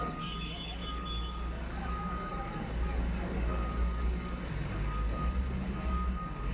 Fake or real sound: fake